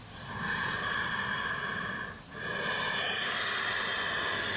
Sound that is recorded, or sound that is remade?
recorded